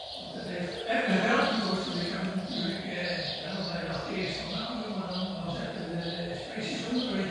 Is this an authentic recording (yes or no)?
yes